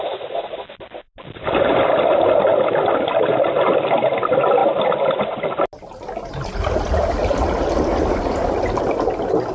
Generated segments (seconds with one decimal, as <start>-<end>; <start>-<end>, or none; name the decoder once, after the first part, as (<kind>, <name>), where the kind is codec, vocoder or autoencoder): none